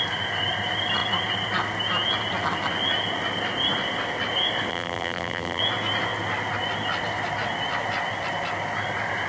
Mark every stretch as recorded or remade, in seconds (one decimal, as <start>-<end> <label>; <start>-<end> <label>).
0.0-4.7 recorded; 4.7-5.6 remade; 5.6-9.3 recorded